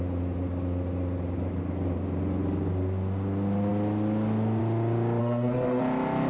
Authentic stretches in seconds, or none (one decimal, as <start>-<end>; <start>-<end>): 0.0-5.2; 5.8-6.3